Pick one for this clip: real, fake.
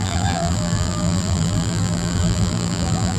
fake